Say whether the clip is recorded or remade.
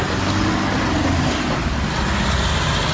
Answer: recorded